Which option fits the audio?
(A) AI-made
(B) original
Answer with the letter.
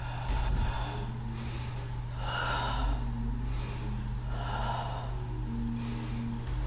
B